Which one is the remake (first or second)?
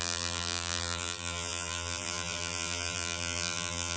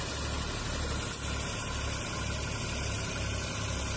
first